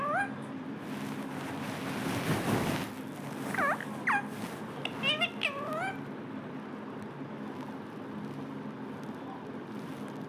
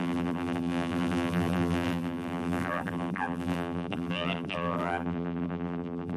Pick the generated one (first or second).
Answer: second